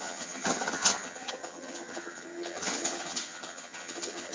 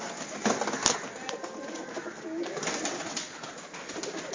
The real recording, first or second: second